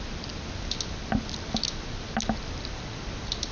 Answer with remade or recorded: recorded